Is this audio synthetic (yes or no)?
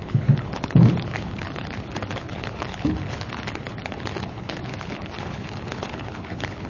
yes